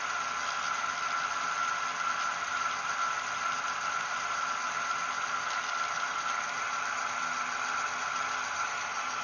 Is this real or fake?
real